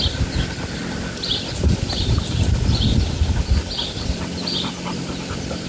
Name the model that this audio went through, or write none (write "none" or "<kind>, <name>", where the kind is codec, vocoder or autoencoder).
none